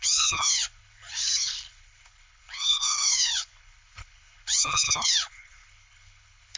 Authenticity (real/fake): fake